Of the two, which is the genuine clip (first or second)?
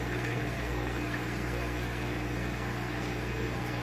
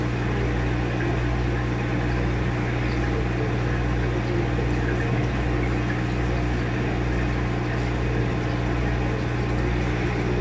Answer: second